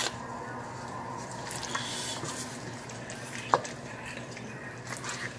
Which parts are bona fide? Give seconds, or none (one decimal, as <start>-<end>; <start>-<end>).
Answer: 0.0-5.4